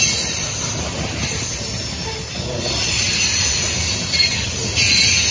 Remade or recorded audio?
recorded